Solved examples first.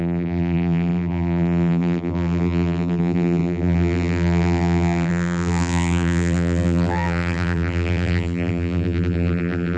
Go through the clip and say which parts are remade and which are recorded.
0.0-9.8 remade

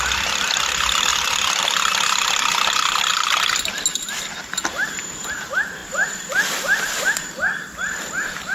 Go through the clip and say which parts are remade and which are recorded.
0.0-1.1 remade; 1.1-1.6 recorded; 1.6-3.1 remade; 3.1-4.9 recorded; 4.9-8.5 remade

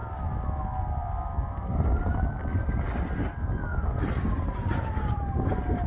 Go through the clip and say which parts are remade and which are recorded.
0.0-5.9 recorded

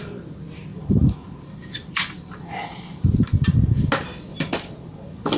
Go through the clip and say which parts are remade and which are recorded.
0.0-0.7 recorded; 0.7-3.9 remade; 3.9-4.3 recorded; 4.3-5.4 remade

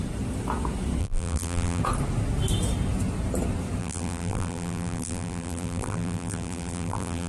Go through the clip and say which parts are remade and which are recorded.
0.0-1.0 recorded; 1.0-1.8 remade; 1.8-3.8 recorded; 3.8-7.3 remade

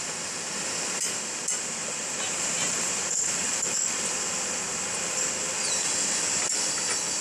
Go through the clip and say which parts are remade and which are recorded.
0.0-1.5 recorded; 1.5-3.5 remade; 3.5-7.2 recorded

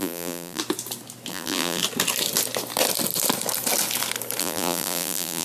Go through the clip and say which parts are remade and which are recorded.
0.0-0.6 remade; 0.6-1.3 recorded; 1.3-1.8 remade; 1.8-4.4 recorded; 4.4-5.4 remade